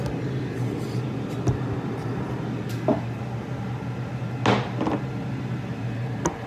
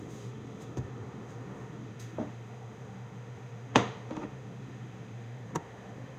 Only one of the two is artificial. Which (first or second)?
second